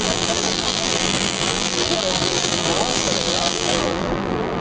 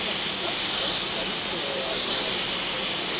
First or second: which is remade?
first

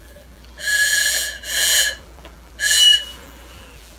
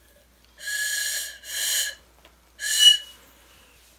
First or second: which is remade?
first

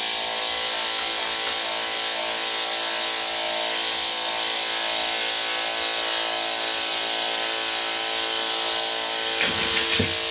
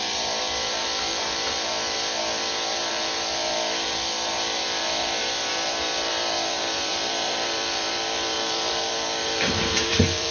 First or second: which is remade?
second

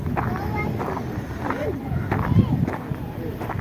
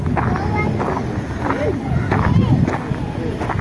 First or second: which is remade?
first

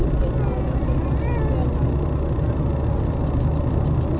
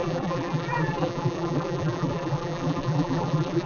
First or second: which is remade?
second